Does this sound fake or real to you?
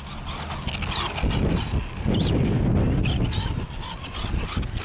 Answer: real